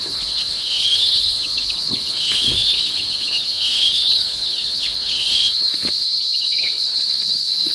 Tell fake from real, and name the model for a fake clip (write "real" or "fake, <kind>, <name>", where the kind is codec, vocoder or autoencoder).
fake, codec, HILCodec